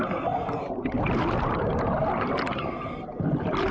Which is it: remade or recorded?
recorded